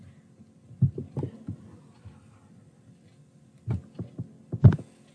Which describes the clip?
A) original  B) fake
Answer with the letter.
A